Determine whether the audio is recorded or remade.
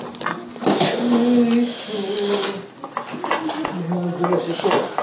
recorded